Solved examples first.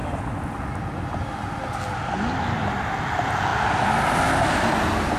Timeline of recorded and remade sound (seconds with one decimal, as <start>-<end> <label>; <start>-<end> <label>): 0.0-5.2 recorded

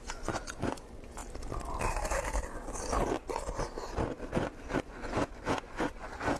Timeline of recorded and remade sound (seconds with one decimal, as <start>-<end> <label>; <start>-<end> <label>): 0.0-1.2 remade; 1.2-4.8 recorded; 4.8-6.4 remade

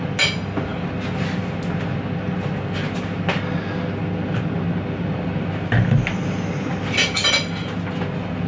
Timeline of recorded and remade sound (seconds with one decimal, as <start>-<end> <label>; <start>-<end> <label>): 0.0-8.5 recorded